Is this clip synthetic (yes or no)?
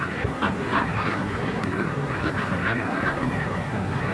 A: yes